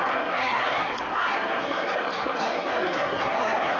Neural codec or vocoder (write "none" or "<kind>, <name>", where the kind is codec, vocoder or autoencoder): codec, SNAC